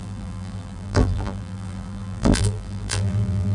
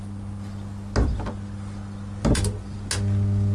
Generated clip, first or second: first